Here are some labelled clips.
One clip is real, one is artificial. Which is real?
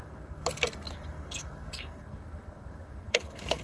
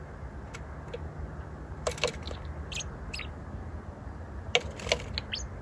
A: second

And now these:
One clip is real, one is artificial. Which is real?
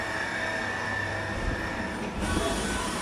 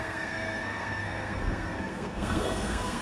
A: first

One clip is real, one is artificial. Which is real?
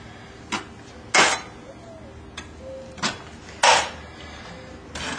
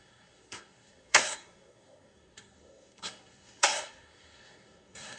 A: first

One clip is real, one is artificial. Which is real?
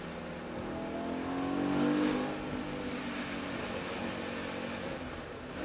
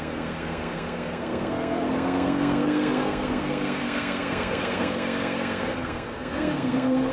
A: first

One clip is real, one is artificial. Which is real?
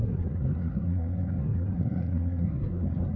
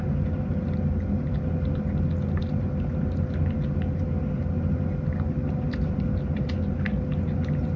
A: second